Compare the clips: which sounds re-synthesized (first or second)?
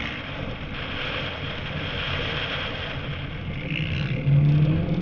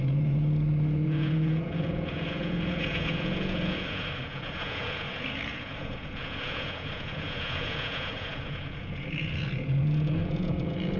second